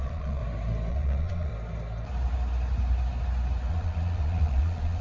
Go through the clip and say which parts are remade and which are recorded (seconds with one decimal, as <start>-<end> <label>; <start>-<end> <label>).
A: 0.0-0.4 remade; 0.4-0.9 recorded; 0.9-1.5 remade; 1.5-3.7 recorded; 3.7-5.0 remade